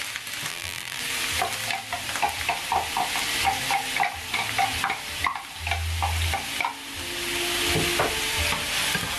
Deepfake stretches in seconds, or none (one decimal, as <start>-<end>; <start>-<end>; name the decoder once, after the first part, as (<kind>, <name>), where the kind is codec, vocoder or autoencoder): 0.5-1.0 (vocoder, BigVGAN v2)